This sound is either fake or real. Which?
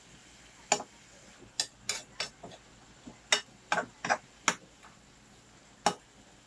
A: real